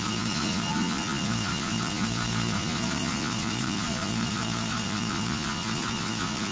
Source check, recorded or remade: remade